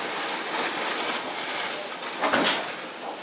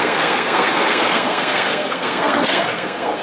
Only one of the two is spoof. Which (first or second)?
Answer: second